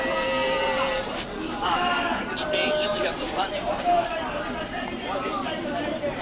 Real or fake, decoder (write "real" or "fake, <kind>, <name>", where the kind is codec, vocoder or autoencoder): fake, vocoder, BigVGAN v2